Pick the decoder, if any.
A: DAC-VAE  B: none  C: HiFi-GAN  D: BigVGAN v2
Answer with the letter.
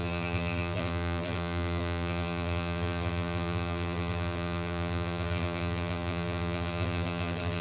D